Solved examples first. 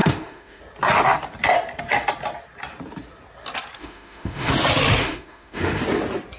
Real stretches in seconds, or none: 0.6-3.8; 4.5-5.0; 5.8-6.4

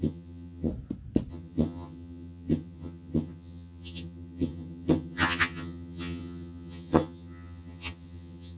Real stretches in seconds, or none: 0.7-1.3

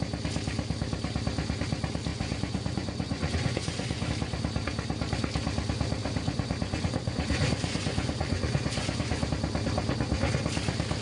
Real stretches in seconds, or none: 0.0-2.1; 4.1-6.0; 9.3-11.0

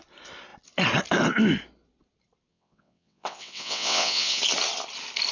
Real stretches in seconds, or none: 0.0-2.5; 4.4-5.3

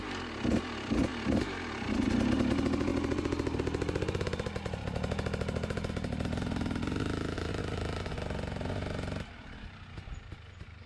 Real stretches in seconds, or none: 0.0-10.9

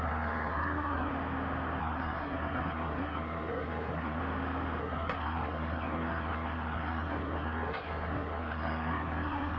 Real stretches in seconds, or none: 1.1-1.8; 4.2-4.8